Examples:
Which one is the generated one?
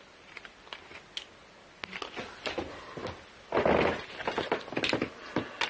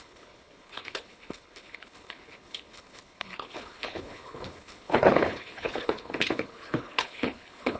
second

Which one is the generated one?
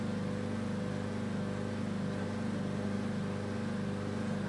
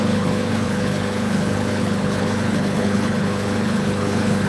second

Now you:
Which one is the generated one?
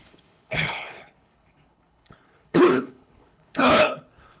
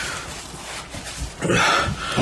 first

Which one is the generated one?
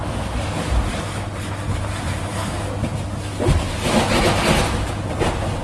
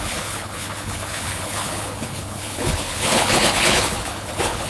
second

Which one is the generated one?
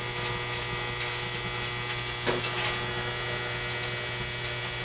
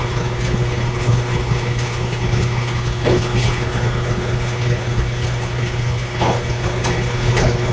second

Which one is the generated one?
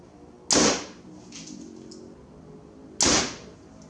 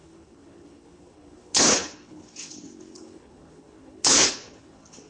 second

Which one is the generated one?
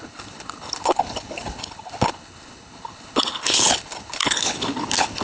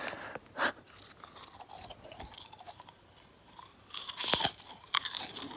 first